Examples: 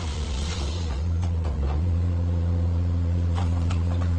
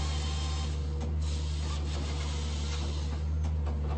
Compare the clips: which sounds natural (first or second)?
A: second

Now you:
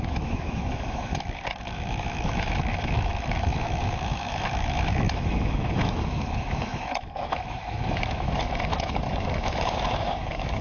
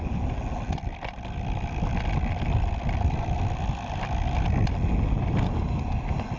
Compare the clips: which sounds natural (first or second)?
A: second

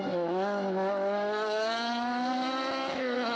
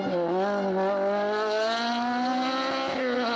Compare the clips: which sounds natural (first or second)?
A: second